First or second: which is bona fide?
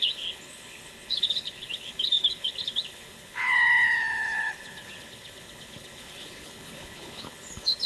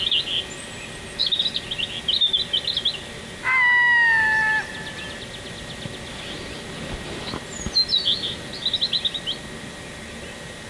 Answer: second